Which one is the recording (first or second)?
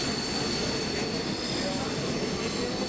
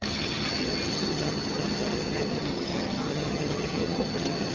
first